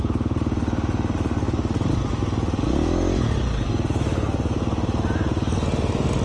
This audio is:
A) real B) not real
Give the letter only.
A